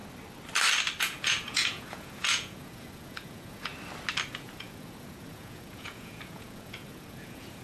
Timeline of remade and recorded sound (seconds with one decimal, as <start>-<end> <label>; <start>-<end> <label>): 0.0-1.0 recorded; 1.0-3.7 remade; 3.7-4.3 recorded; 4.3-7.6 remade